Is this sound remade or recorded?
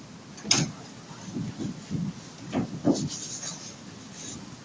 recorded